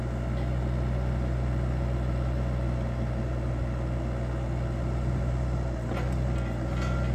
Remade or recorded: recorded